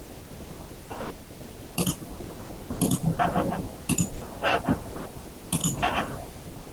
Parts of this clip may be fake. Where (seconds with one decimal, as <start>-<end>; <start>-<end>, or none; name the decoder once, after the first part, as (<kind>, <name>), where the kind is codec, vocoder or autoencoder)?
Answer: 5.6-6.3 (vocoder, BigVGAN v2)